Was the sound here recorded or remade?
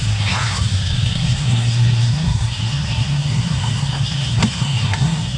remade